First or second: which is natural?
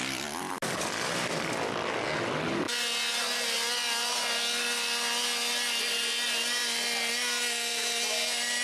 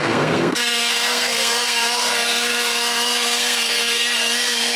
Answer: first